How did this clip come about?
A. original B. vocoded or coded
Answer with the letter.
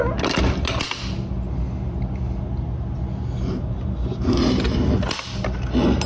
A